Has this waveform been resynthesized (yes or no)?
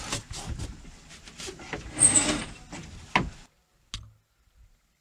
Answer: no